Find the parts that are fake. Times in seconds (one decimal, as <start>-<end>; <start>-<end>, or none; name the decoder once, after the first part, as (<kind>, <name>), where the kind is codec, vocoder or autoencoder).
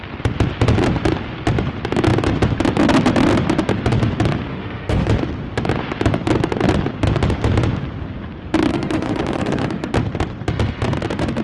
4.5-5.1 (autoencoder, DAC-VAE); 8.7-9.9